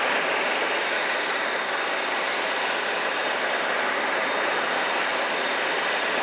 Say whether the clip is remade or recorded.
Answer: recorded